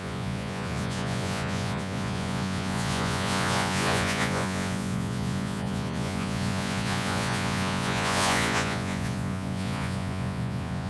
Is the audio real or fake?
fake